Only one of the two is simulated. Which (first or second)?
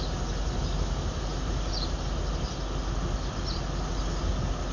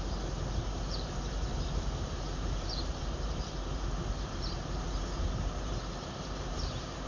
second